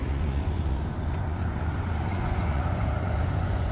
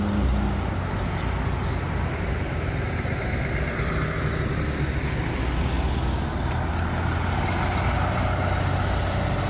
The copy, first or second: first